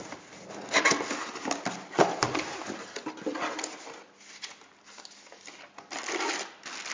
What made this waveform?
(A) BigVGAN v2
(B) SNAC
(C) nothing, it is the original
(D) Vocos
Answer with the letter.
C